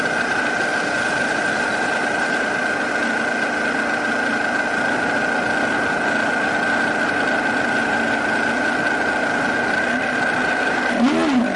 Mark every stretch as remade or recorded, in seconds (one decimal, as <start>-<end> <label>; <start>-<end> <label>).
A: 0.0-11.6 recorded